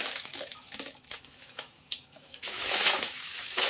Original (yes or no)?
no